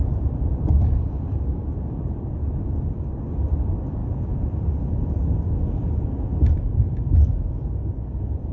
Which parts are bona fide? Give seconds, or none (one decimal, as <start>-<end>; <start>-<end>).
4.0-4.8